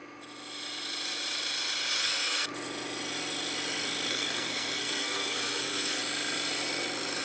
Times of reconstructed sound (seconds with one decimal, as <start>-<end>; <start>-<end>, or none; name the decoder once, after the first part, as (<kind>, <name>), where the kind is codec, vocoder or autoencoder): 2.0-2.5 (codec, SNAC); 4.1-6.0